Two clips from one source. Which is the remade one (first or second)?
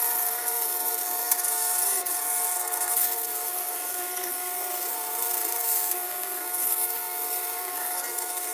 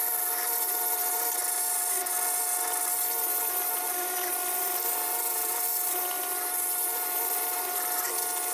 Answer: first